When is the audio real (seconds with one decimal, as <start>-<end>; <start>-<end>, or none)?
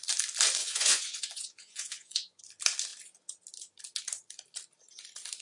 0.0-0.6; 2.4-5.4